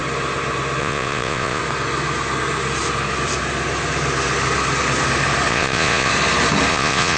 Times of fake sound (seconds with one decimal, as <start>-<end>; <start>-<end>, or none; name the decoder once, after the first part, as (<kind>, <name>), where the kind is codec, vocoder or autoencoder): 0.8-1.6 (vocoder, Vocos); 5.5-6.1; 6.7-7.2